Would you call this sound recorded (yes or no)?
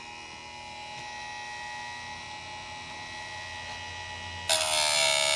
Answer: yes